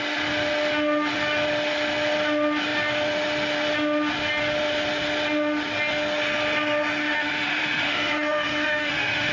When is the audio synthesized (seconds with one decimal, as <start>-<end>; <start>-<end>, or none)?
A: 7.0-9.3